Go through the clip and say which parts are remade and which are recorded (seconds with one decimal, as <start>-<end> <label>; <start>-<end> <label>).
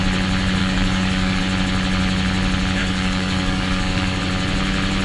0.0-0.6 recorded; 0.6-1.4 remade; 1.4-2.8 recorded; 2.8-4.2 remade; 4.2-5.0 recorded